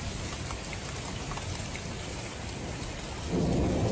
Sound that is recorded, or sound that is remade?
recorded